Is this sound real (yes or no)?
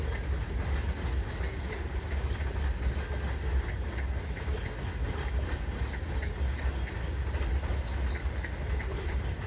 yes